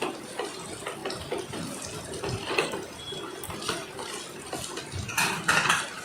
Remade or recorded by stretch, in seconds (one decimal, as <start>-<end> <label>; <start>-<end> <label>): 0.0-6.0 recorded